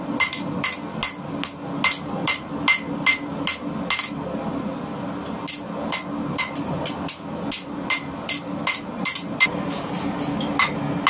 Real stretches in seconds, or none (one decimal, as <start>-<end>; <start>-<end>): 0.0-11.1